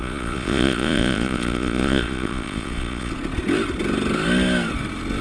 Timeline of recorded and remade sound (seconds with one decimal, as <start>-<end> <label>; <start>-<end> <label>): 0.0-3.1 remade; 3.1-5.2 recorded